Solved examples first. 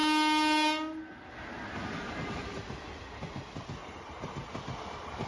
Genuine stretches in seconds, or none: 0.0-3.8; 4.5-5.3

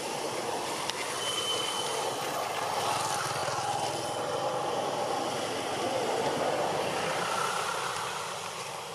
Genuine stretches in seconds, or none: 0.0-8.9